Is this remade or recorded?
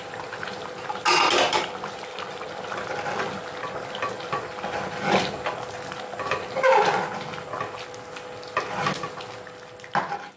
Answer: recorded